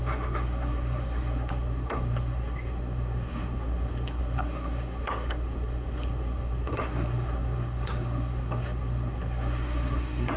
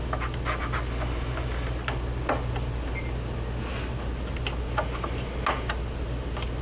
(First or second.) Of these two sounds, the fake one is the first